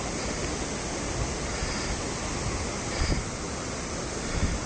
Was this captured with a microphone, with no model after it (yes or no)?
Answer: yes